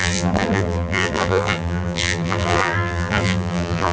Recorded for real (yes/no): no